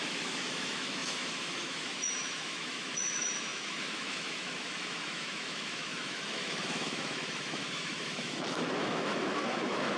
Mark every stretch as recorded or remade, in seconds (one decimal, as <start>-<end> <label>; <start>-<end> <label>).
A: 0.0-10.0 remade